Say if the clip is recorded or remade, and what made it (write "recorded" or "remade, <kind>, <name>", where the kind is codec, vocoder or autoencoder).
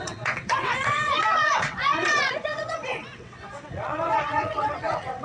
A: remade, vocoder, WaveNeXt